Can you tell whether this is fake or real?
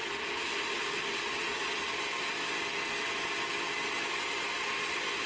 real